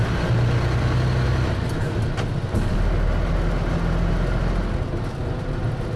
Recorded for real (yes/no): yes